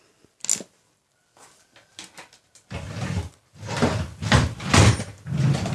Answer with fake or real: real